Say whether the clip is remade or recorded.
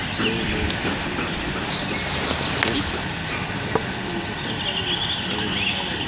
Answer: recorded